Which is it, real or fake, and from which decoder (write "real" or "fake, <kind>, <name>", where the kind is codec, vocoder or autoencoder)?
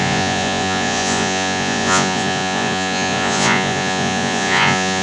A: fake, vocoder, Vocos